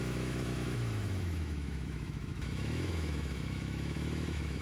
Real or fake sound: fake